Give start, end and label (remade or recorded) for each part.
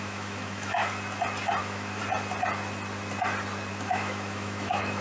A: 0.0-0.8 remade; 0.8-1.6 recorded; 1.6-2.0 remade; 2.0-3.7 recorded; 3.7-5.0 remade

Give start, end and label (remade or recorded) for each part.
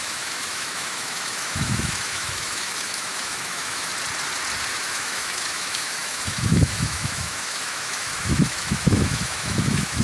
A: 0.0-3.9 remade; 3.9-4.7 recorded; 4.7-10.0 remade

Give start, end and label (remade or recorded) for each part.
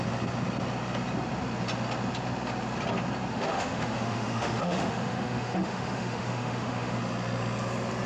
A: 0.0-3.3 recorded; 3.3-7.0 remade; 7.0-8.1 recorded